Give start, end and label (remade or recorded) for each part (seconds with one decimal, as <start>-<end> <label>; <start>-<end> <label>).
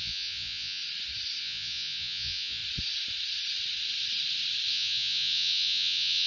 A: 0.0-0.8 remade; 0.8-1.4 recorded; 1.4-2.6 remade; 2.6-4.7 recorded; 4.7-6.3 remade